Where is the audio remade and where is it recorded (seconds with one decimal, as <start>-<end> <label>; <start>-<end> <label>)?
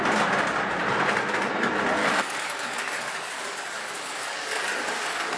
0.0-2.0 recorded; 2.0-5.4 remade